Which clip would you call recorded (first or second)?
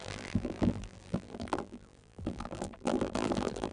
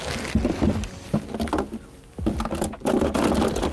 second